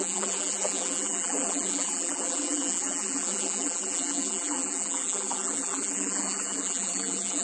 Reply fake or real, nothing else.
fake